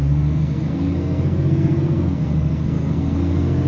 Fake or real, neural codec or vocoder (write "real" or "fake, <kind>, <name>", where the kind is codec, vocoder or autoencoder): fake, codec, SNAC